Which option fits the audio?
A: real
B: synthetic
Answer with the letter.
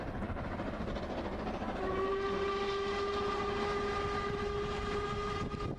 A